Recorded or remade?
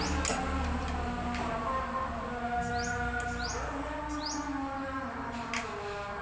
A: recorded